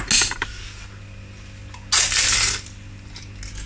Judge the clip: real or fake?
real